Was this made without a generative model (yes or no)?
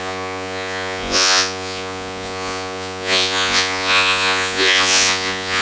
no